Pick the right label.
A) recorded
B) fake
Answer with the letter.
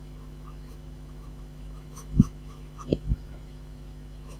B